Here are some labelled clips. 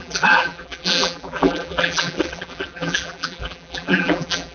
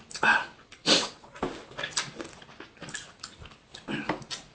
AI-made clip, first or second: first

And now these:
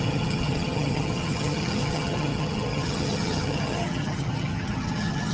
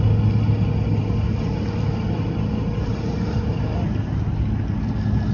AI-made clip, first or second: first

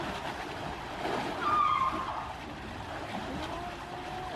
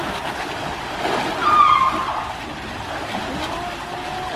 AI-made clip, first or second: first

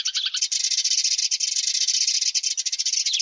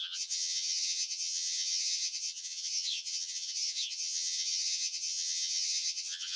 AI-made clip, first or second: second